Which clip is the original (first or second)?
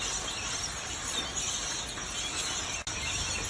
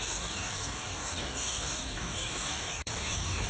first